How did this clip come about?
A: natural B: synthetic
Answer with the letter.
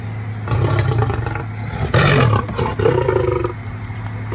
A